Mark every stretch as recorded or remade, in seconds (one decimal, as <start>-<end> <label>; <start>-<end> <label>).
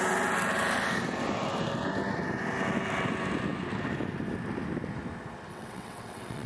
0.0-5.5 recorded; 5.5-6.5 remade